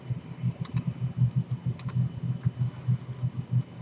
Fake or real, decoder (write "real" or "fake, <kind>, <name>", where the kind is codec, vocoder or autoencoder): real